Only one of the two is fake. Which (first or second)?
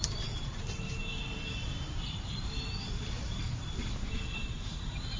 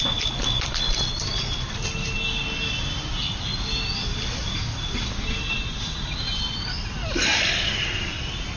first